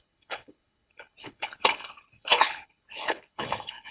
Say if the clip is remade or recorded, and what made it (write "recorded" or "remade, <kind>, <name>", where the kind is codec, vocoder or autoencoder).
remade, codec, HILCodec